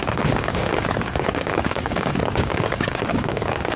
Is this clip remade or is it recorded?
remade